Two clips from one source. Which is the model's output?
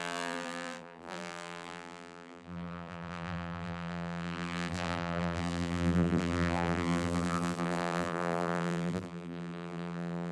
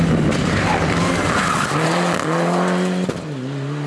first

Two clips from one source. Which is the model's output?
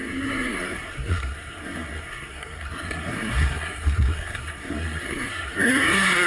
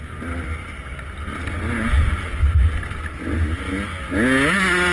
first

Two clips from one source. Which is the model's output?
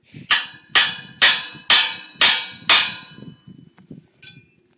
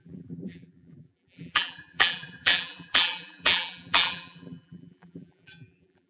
second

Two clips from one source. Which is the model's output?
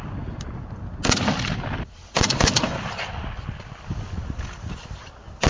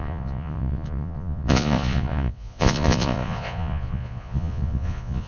second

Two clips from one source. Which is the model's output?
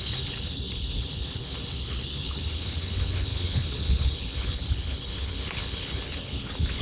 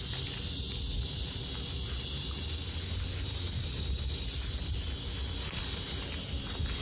first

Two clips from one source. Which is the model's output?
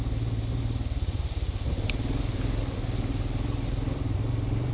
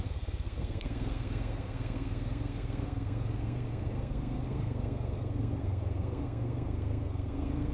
second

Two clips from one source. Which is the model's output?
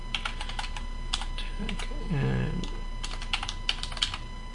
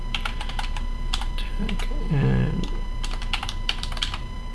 second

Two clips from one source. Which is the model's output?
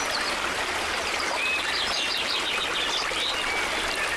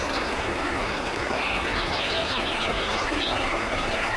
second